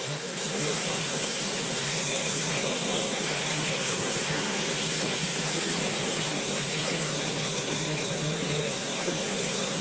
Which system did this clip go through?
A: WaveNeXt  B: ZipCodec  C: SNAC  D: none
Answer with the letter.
C